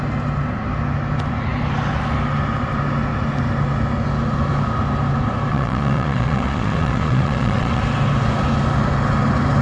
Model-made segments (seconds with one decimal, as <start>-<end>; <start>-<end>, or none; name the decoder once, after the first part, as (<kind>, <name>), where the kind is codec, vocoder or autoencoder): 5.5-7.8 (vocoder, Vocos)